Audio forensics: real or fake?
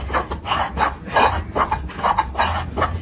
real